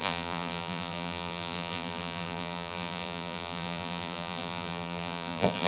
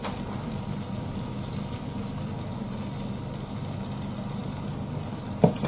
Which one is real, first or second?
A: second